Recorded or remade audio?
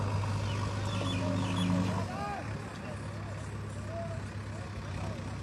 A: recorded